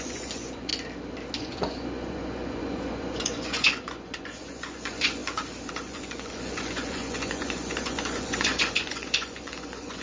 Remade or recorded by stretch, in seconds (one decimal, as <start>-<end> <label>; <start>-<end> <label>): 0.0-0.7 remade; 0.7-1.4 recorded; 1.4-5.2 remade; 5.2-5.7 recorded; 5.7-10.0 remade